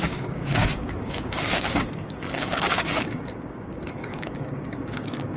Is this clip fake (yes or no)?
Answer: yes